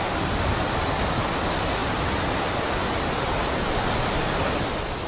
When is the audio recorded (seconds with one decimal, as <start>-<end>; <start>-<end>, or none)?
0.0-5.1